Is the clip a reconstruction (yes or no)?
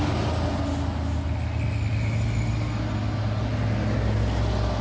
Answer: no